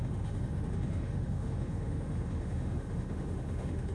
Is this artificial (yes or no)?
yes